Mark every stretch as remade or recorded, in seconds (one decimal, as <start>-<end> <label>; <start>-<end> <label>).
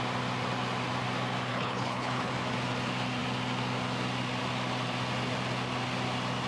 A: 0.0-1.5 recorded; 1.5-2.3 remade; 2.3-6.5 recorded